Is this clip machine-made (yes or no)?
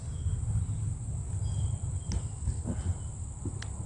no